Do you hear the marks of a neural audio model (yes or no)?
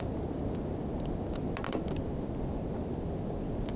no